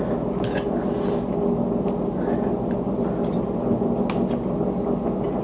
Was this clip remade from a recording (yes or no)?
no